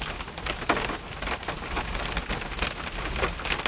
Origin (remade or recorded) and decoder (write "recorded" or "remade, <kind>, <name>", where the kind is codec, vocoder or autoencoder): recorded